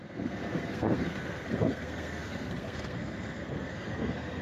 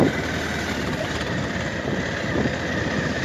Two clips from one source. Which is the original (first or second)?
second